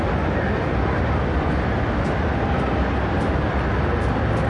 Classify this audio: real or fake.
real